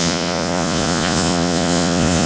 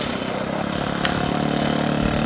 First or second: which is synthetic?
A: first